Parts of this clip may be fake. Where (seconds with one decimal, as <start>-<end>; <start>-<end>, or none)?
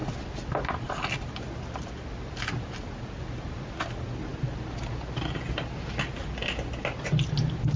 none